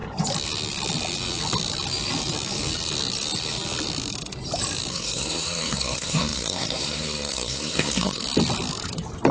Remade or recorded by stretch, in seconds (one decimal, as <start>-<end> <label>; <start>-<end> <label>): 0.0-4.9 recorded; 4.9-8.2 remade; 8.2-9.3 recorded